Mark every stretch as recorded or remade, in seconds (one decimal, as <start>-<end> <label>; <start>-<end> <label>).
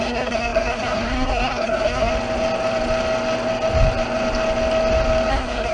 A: 0.0-2.1 remade; 2.1-5.3 recorded; 5.3-5.7 remade